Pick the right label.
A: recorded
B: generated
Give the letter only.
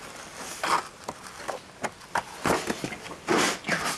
A